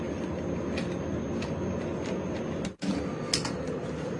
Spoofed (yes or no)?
no